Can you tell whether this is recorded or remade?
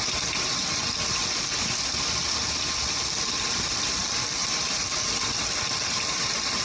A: recorded